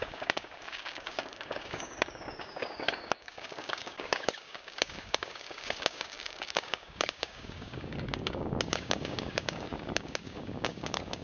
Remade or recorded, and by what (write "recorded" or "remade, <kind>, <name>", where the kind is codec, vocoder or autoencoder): remade, codec, DAC